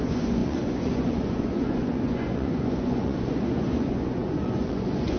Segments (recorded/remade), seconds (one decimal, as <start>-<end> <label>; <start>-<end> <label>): 0.0-5.2 remade